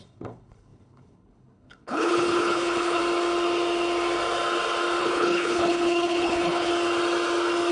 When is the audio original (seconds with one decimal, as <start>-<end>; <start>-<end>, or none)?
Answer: 3.0-5.0; 6.7-7.7